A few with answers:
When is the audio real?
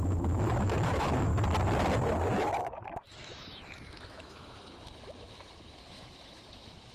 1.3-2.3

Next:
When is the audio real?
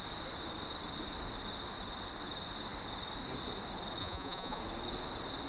0.0-4.0; 4.6-5.5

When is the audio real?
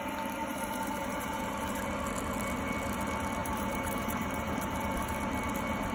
0.0-0.5; 1.8-3.4; 5.2-5.9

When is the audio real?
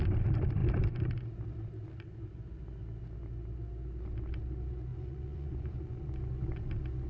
0.0-4.9; 6.1-7.1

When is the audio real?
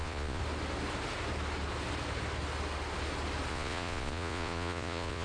0.4-3.5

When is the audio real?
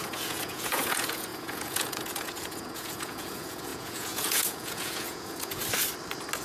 5.6-6.4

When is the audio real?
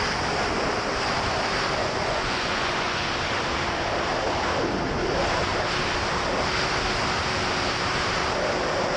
0.0-1.8; 3.1-9.0